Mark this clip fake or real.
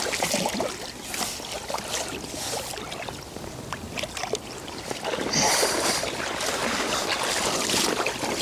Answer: real